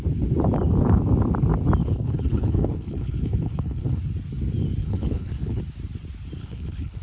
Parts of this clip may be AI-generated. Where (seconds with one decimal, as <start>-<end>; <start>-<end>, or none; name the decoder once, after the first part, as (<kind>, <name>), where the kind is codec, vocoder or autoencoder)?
1.8-4.0 (codec, HILCodec); 4.8-5.6; 6.4-7.0